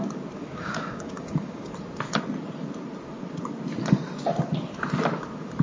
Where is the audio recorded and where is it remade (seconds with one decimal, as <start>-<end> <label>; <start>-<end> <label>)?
0.0-0.4 recorded; 0.4-1.7 remade; 1.7-5.6 recorded